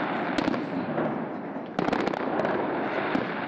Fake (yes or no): no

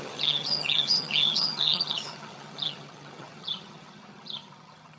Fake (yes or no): yes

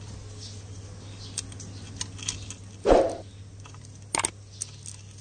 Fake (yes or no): no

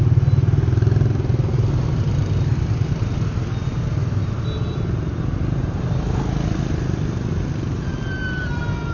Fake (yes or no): no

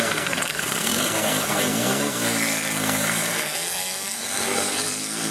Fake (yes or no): yes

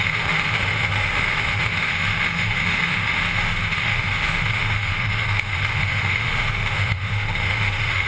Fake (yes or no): yes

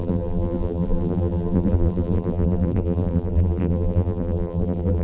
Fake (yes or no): yes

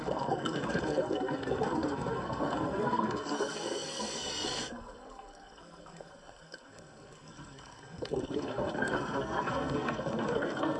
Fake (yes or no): yes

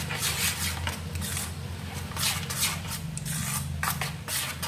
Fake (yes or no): no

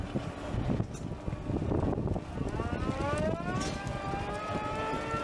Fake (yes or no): no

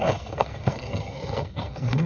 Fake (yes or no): yes